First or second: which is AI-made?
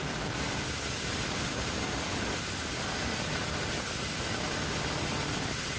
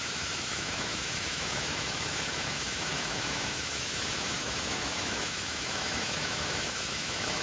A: second